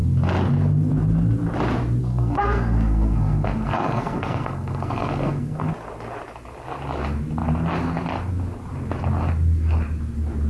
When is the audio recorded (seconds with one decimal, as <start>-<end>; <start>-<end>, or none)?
0.0-2.0; 5.7-10.5

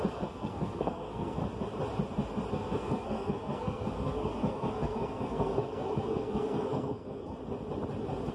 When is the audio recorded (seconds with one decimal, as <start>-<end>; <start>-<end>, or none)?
1.4-2.5; 7.4-8.3

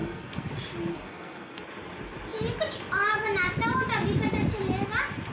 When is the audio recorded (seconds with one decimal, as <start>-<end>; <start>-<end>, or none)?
0.5-0.9; 1.6-5.3

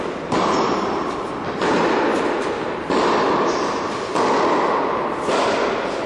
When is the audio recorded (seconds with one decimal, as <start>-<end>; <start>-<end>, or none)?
0.0-6.1

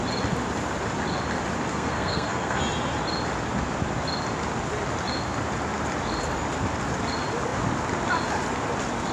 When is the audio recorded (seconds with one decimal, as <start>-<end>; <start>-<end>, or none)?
0.0-1.7; 2.6-9.1

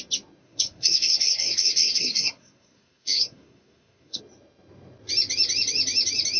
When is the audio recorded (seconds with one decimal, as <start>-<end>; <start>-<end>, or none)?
0.0-0.4; 4.2-6.4